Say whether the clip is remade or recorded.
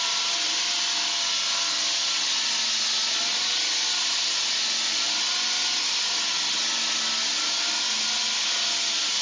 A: recorded